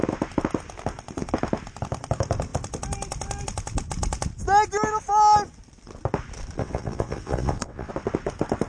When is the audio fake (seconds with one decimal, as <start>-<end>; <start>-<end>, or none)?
6.6-7.9